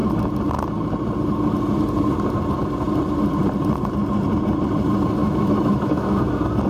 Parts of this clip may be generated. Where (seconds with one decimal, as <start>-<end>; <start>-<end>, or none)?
5.2-6.3